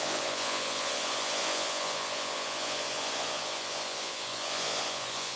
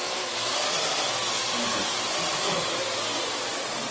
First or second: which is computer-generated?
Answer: first